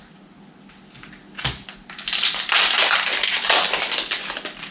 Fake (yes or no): no